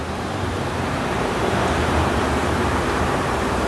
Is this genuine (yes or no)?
no